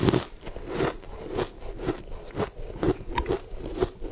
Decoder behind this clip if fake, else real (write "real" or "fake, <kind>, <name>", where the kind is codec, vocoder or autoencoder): real